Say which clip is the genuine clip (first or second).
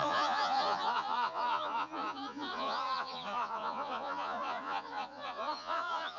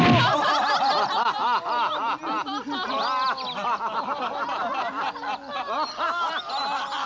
second